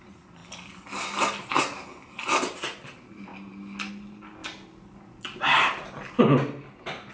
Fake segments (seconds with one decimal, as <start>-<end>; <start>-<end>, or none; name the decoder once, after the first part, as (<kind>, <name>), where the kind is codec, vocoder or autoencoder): none